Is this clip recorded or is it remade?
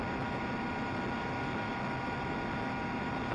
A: recorded